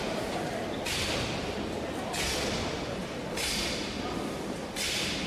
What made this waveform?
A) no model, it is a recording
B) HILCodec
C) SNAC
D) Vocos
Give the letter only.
A